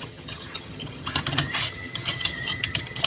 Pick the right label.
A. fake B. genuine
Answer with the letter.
A